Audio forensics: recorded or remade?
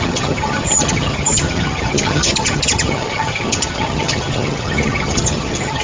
remade